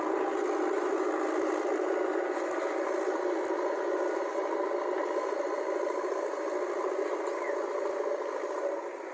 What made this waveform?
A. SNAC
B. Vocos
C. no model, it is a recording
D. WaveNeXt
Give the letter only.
C